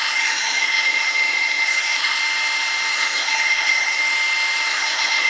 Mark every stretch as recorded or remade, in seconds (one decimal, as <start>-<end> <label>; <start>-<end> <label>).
0.0-2.2 remade; 2.2-2.9 recorded; 2.9-4.0 remade; 4.0-4.7 recorded; 4.7-5.3 remade

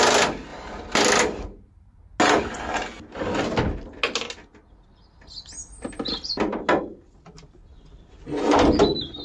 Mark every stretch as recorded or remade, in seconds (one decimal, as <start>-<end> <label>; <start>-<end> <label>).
0.0-9.2 recorded

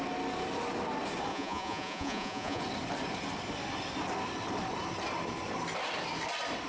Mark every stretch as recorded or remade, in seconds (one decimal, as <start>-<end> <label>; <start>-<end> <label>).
0.0-1.3 recorded; 1.3-2.6 remade; 2.6-6.7 recorded

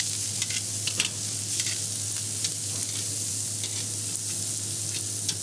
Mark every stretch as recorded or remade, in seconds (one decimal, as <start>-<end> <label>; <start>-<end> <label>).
0.0-5.4 recorded

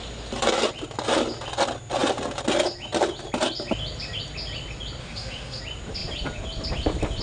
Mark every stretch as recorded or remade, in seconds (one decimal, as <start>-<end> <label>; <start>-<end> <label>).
0.0-5.0 recorded; 5.0-5.6 remade; 5.6-7.2 recorded

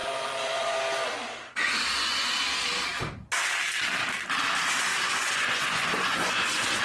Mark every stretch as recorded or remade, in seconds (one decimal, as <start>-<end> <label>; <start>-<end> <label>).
0.0-0.8 remade; 0.8-1.6 recorded; 1.6-2.4 remade; 2.4-4.9 recorded; 4.9-6.8 remade